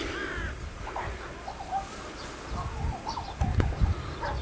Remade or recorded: recorded